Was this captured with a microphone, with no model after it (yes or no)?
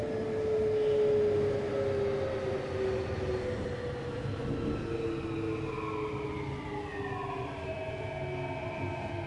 yes